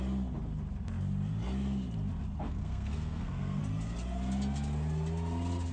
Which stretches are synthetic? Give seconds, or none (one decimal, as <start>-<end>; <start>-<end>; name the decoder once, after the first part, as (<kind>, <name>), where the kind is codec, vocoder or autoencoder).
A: 2.4-3.6 (codec, SNAC)

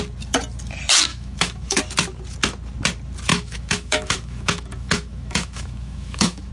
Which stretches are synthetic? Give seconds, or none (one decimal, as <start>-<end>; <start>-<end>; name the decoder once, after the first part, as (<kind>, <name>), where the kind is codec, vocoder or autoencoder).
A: 1.1-1.8 (autoencoder, DAC-VAE); 3.3-6.5

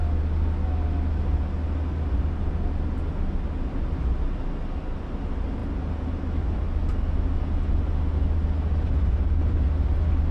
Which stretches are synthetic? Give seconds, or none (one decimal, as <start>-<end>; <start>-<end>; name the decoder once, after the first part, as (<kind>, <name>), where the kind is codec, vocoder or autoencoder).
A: none

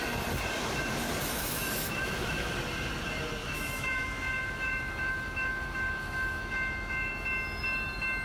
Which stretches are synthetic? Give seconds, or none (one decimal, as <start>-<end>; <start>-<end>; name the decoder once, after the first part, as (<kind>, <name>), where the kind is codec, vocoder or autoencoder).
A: 1.2-2.5 (autoencoder, DAC-VAE); 3.4-7.1